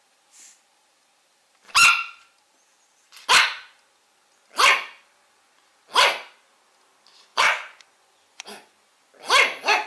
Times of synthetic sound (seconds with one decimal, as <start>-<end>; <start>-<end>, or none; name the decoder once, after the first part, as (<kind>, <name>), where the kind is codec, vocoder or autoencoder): 7.3-9.1 (vocoder, Vocos)